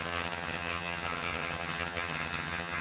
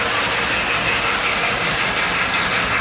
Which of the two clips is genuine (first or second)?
second